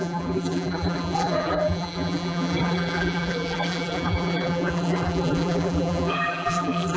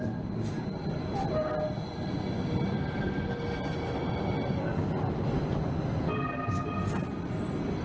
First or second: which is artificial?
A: first